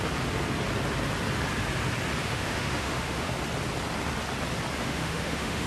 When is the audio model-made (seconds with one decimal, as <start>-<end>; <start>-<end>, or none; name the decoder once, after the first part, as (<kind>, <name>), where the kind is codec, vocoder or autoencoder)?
2.2-3.3 (autoencoder, DAC-VAE); 4.8-5.7